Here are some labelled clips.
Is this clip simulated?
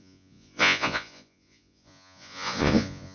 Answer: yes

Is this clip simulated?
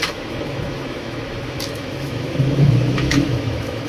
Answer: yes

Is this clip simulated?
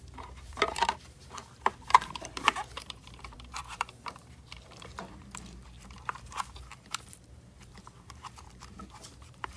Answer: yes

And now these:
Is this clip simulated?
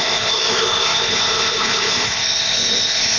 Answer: yes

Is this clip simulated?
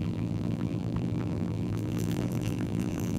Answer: yes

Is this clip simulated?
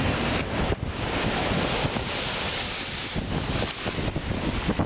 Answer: no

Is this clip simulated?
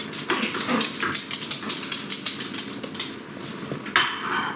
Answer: no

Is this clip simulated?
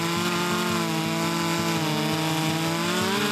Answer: no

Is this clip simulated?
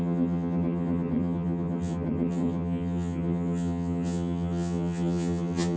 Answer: yes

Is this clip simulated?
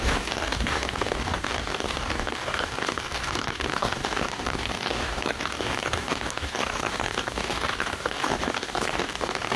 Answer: yes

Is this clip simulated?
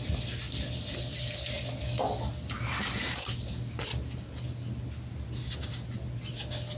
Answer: no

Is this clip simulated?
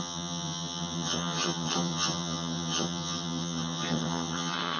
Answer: yes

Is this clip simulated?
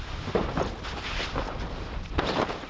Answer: no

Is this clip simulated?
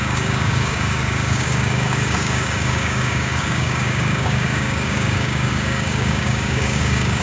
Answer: yes